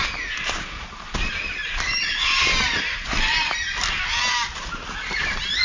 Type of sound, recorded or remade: recorded